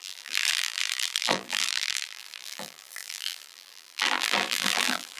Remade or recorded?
remade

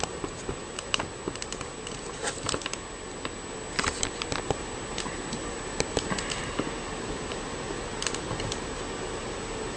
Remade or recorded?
recorded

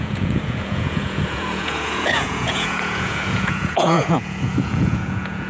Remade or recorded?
remade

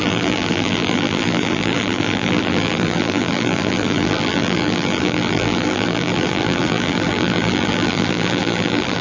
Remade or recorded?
remade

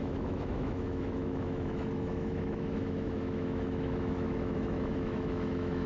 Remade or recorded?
remade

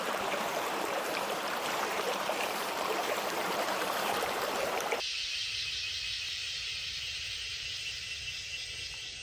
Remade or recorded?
remade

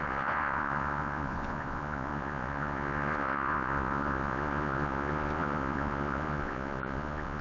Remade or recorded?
remade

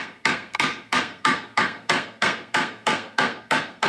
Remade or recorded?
remade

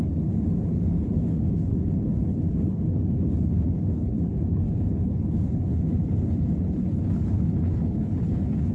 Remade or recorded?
remade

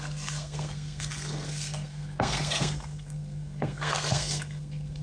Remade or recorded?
remade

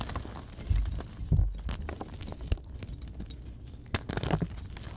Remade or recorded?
recorded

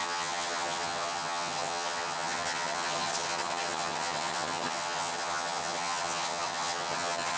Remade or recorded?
remade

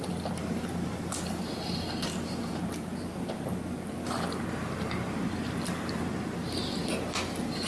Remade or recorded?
recorded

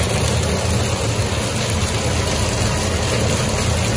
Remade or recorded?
recorded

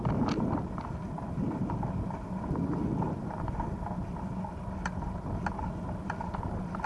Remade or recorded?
recorded